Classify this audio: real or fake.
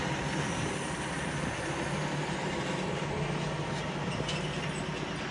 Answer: real